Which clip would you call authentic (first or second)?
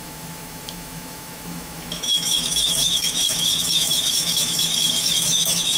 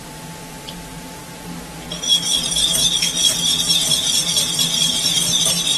second